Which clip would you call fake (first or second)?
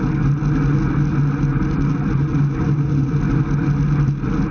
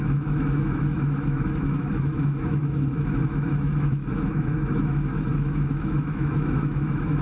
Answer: second